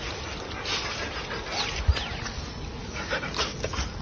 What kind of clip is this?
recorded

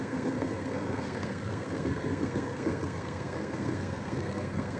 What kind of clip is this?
remade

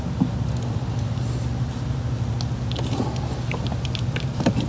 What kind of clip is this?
recorded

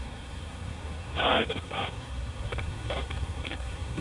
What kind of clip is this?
remade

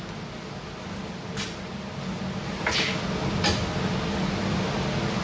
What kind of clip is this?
recorded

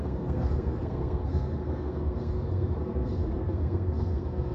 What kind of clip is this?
remade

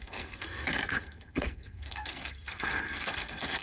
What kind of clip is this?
remade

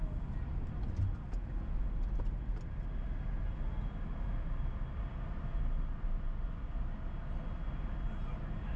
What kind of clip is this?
recorded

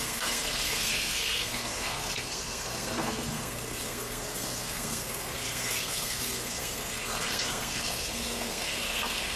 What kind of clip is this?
remade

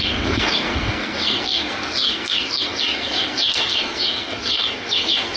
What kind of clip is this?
remade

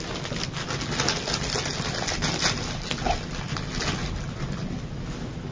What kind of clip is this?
recorded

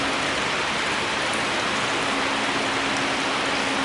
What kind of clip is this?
recorded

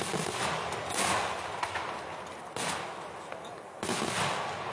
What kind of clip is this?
recorded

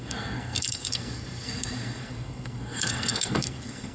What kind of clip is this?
remade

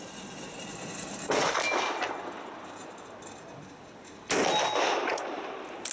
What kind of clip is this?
recorded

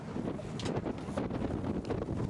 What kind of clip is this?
recorded